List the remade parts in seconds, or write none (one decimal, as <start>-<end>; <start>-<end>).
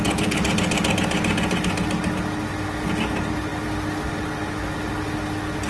none